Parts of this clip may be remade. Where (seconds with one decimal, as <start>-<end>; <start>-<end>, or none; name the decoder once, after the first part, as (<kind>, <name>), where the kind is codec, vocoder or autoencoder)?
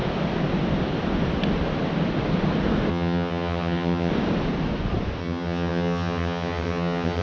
2.9-4.1 (vocoder, HiFi-GAN); 5.2-7.2